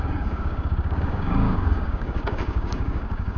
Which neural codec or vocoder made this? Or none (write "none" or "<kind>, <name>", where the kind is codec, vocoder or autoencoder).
codec, DAC